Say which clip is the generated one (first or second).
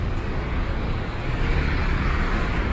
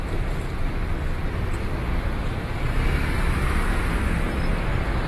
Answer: first